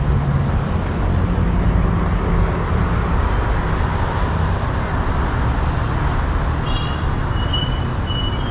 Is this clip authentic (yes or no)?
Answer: yes